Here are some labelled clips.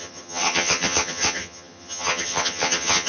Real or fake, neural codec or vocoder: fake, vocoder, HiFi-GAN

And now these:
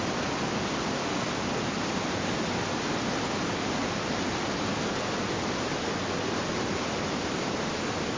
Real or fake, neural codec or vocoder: real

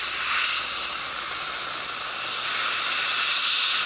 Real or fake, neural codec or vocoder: real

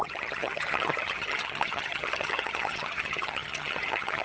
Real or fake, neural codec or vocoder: fake, vocoder, HiFi-GAN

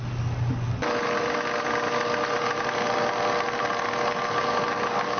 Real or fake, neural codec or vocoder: real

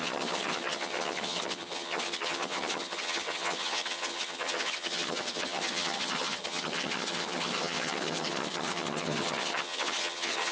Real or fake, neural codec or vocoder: fake, vocoder, HiFi-GAN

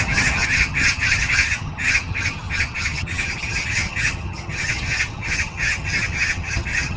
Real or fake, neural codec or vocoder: fake, vocoder, HiFi-GAN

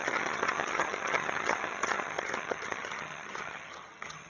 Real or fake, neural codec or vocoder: fake, vocoder, HiFi-GAN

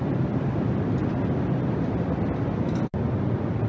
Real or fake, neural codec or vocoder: real